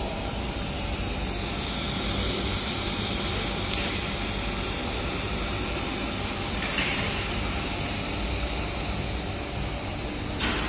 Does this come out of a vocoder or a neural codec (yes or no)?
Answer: no